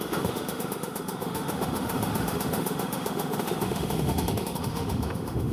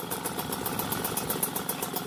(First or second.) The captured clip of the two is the second